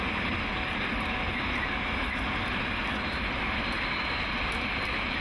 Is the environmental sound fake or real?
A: real